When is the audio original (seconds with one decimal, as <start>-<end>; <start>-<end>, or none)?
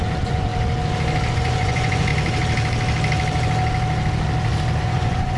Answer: 0.5-1.3; 2.1-4.8